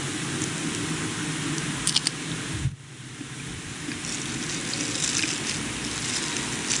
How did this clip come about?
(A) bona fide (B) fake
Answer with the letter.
A